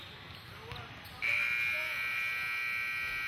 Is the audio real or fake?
real